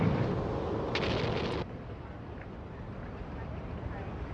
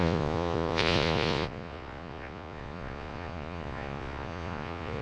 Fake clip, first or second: second